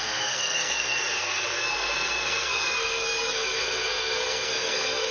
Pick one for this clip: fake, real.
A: fake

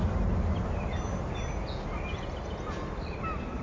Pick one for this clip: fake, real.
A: real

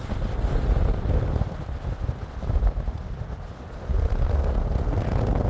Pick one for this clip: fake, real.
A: real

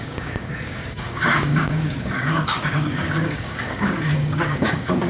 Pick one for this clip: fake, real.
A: fake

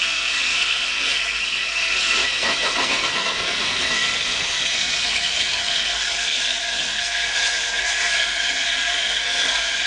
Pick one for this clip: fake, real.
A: fake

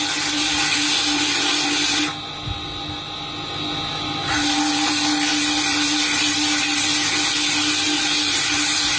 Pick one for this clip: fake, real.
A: real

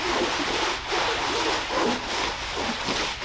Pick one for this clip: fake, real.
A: real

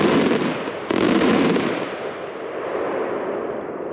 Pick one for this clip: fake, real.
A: real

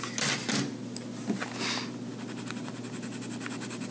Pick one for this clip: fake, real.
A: real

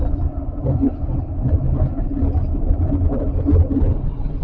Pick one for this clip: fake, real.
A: real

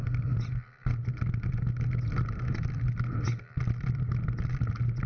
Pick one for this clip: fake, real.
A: real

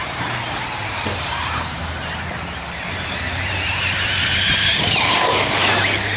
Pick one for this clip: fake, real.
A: fake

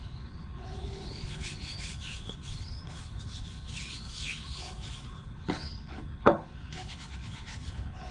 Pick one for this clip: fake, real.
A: fake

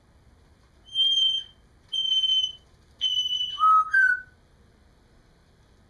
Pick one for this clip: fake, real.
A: fake